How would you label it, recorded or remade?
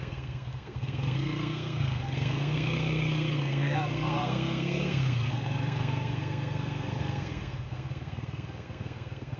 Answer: remade